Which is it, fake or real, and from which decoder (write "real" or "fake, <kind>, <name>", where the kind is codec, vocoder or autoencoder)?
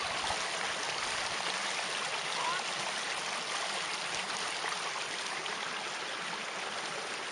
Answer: real